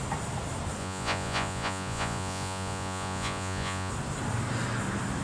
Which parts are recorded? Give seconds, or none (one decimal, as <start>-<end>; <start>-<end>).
0.0-0.8; 3.9-5.2